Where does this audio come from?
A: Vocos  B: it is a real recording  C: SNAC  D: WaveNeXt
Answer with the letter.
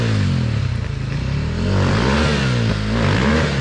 B